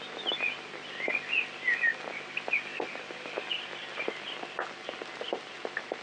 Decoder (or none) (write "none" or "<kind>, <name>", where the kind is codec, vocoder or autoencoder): none